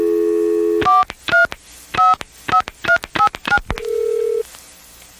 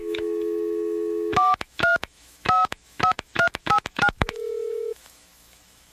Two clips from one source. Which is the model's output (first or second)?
second